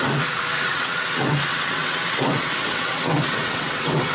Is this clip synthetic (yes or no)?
yes